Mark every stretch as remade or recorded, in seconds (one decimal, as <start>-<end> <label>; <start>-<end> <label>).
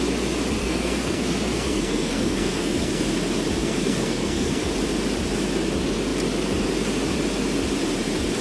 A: 0.0-0.6 recorded; 0.6-3.1 remade; 3.1-3.6 recorded; 3.6-4.7 remade; 4.7-8.4 recorded